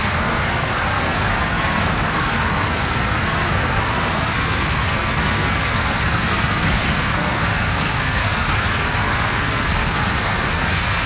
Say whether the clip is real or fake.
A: fake